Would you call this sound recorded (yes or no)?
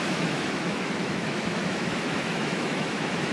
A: no